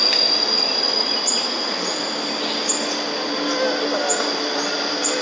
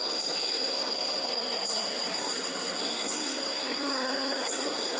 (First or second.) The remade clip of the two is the second